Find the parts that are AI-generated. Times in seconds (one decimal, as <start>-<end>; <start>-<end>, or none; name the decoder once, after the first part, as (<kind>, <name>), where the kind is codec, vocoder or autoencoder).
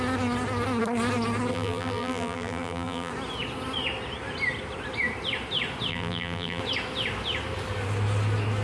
1.5-3.1 (vocoder, BigVGAN v2); 5.9-6.6